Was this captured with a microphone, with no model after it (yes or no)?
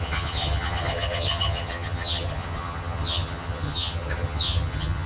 no